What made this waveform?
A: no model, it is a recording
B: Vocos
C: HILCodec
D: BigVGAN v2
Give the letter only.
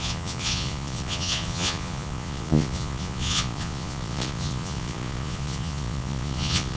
B